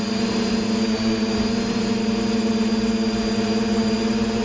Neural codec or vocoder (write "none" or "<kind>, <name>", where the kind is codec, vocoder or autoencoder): vocoder, BigVGAN v2